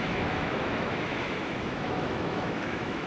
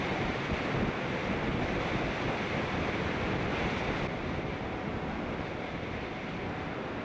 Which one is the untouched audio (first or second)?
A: second